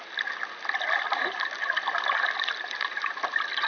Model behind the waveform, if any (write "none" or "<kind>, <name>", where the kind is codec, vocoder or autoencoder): none